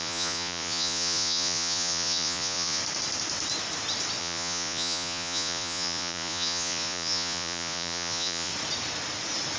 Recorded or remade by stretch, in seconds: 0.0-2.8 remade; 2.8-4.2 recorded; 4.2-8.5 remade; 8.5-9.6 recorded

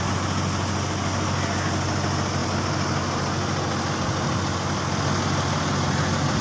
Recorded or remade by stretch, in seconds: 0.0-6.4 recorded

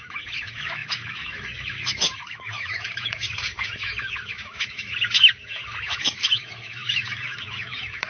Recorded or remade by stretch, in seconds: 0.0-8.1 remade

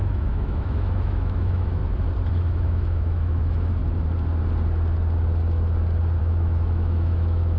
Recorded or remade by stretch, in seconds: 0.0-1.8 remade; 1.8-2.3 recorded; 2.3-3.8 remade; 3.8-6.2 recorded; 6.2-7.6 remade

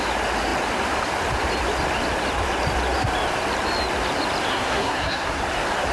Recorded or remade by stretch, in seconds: 0.0-4.5 recorded; 4.5-5.4 remade; 5.4-5.9 recorded

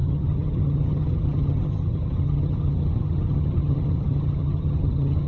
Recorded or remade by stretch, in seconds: 0.0-5.3 remade